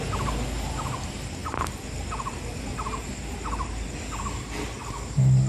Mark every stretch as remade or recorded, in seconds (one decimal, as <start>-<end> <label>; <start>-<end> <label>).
0.0-5.5 recorded